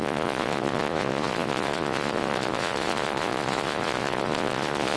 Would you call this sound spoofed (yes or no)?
yes